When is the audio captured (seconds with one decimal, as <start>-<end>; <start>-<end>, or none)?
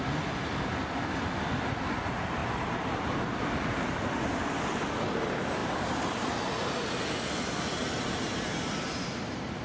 0.0-2.4; 3.2-5.6; 6.4-7.8